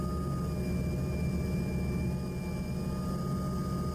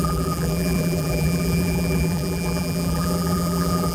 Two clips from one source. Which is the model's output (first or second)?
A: second